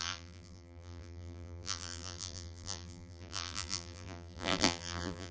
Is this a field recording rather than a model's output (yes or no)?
no